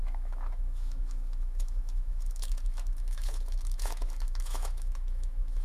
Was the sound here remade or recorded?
remade